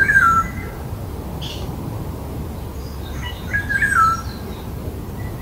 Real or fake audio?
real